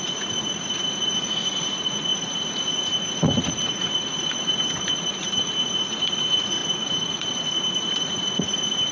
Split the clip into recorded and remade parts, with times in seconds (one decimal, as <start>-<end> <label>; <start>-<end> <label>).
0.0-8.9 remade